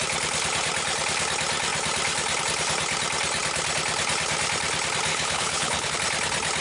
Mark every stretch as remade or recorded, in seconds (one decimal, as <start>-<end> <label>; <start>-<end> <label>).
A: 0.0-5.1 recorded; 5.1-5.9 remade; 5.9-6.6 recorded